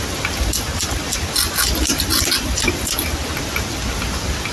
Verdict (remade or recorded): recorded